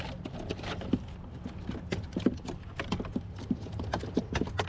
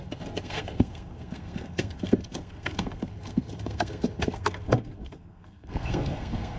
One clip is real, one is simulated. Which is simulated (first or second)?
second